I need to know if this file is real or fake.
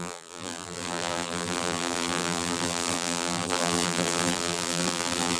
fake